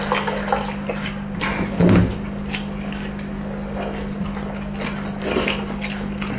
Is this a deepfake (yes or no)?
no